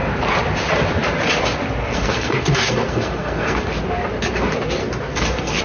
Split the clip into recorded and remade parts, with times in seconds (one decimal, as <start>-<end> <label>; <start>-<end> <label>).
0.0-1.8 recorded; 1.8-3.6 remade; 3.6-4.8 recorded; 4.8-5.6 remade